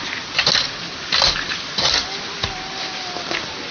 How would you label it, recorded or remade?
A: recorded